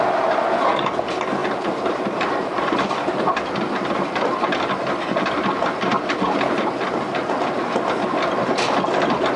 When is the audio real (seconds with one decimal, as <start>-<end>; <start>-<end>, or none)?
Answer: 0.0-1.4; 2.8-9.4